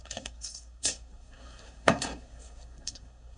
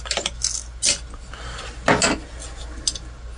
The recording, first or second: second